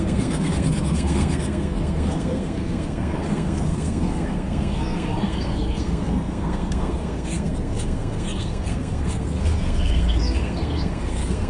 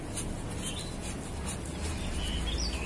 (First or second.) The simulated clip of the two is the first